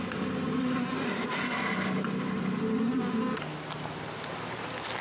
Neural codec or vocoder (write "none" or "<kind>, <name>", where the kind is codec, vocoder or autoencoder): none